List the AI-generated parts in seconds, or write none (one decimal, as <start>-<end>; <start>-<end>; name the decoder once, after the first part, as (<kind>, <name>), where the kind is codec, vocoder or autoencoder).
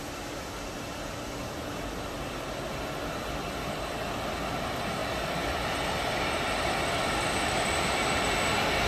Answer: none